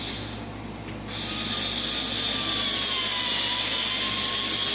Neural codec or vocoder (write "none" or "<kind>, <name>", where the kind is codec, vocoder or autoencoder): none